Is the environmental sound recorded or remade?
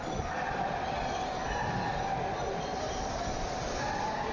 recorded